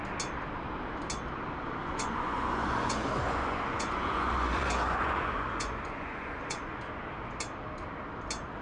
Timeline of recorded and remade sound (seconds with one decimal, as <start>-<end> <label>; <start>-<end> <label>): 0.0-1.8 recorded; 1.8-6.8 remade; 6.8-8.6 recorded